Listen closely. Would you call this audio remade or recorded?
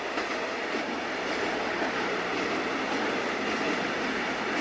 recorded